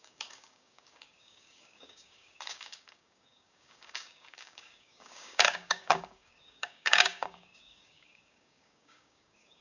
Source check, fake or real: fake